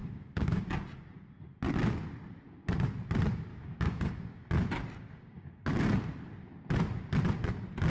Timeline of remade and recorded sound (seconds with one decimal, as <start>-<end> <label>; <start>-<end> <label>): 0.0-0.6 remade; 0.6-3.5 recorded; 3.5-4.5 remade; 4.5-5.1 recorded; 5.1-5.7 remade; 5.7-7.9 recorded